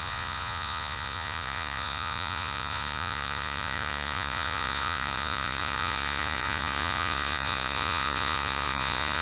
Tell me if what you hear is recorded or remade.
remade